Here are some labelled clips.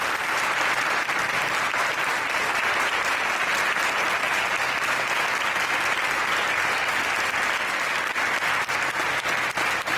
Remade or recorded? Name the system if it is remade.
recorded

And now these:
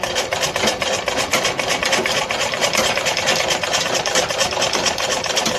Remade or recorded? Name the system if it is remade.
remade, vocoder, BigVGAN v2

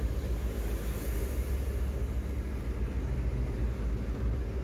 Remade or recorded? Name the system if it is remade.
recorded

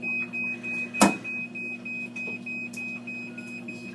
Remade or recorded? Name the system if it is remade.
recorded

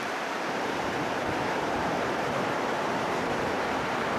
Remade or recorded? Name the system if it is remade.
remade, vocoder, BigVGAN v2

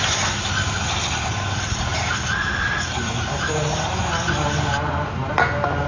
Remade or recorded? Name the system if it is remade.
recorded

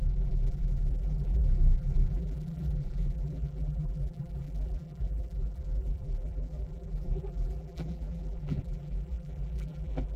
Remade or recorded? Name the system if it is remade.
remade, vocoder, BigVGAN v2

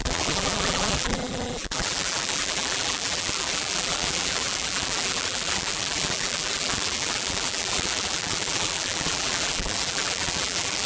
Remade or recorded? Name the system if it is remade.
remade, vocoder, BigVGAN v2